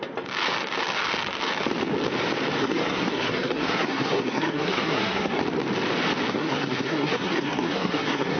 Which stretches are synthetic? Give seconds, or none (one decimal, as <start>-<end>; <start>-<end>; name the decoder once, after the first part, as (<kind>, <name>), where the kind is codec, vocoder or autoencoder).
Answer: 2.6-5.4 (codec, SNAC); 6.3-8.4